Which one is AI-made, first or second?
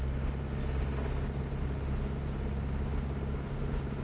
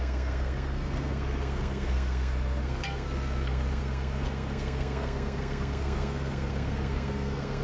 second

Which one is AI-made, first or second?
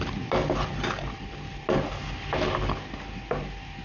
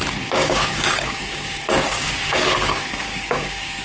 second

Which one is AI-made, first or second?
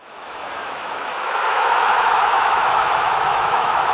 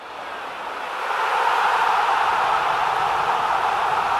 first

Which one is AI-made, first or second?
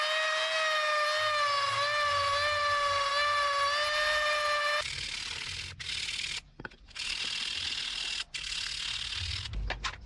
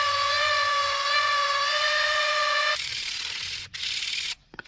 second